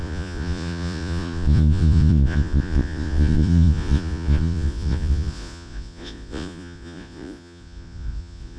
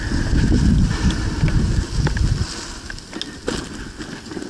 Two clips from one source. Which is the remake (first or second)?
first